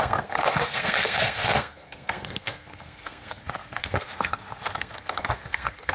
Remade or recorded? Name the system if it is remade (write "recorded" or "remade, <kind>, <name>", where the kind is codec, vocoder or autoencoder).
remade, codec, SNAC